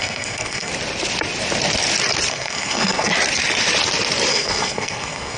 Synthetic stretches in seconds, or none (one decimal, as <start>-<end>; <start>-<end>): 0.0-0.7; 2.3-3.1; 4.3-5.4